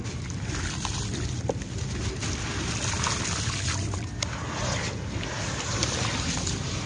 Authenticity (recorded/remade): recorded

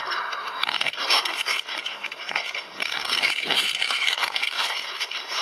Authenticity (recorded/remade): remade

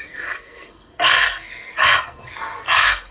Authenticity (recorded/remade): remade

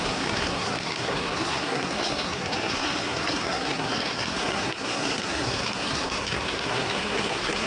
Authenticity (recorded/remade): remade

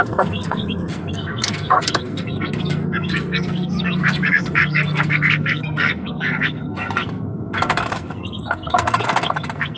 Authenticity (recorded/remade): remade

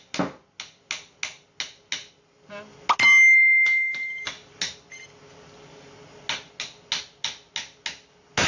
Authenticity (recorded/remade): recorded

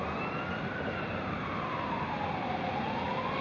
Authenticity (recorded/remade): recorded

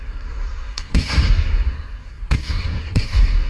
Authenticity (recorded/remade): remade